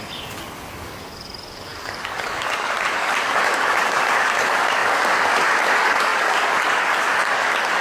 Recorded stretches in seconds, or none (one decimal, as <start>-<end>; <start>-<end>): none